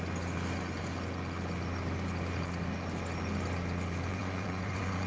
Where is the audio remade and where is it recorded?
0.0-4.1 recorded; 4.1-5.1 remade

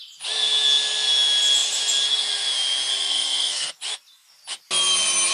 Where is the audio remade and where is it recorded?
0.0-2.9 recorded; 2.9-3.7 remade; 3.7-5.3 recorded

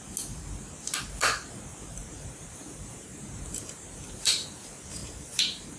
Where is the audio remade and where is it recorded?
0.0-2.0 recorded; 2.0-4.5 remade; 4.5-5.0 recorded; 5.0-5.8 remade